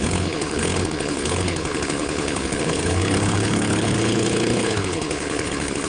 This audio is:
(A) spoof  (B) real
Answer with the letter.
A